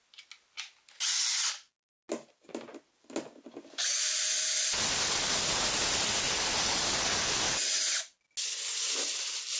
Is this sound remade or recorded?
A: recorded